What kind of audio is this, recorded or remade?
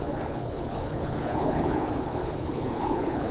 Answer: remade